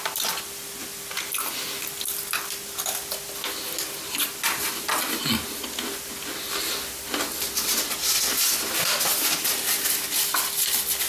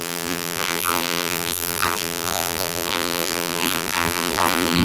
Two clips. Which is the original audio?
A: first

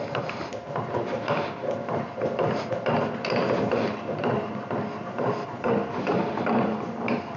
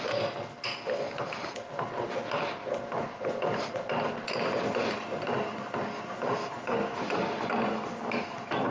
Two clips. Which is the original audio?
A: second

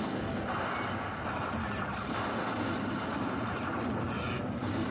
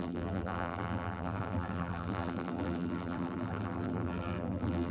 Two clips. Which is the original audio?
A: first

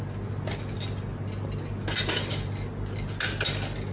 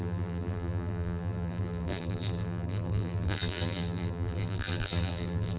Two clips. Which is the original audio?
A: first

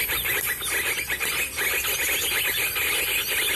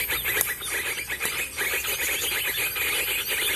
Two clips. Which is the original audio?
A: second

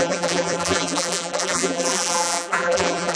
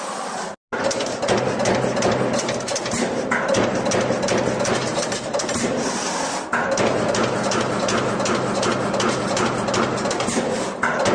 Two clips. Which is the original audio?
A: second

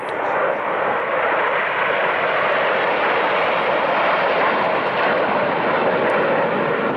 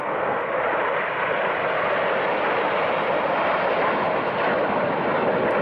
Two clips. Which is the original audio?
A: second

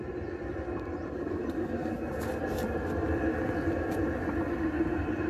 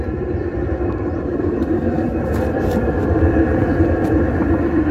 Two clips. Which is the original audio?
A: first